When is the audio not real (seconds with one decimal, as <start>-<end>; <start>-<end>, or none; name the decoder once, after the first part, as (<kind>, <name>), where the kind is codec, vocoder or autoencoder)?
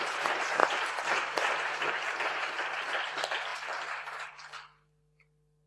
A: 0.6-2.6 (vocoder, BigVGAN v2)